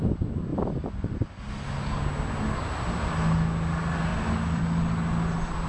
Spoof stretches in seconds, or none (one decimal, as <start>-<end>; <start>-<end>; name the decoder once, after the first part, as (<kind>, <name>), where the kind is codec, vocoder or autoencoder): 0.5-1.5 (vocoder, BigVGAN v2); 4.1-4.6